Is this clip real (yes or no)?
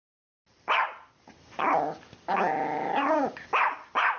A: yes